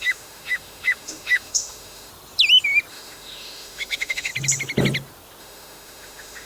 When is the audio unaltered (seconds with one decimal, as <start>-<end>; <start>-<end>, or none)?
2.1-2.9; 4.3-5.4